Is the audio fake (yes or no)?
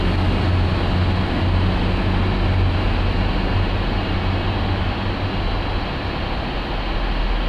no